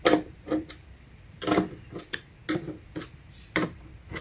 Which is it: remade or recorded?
remade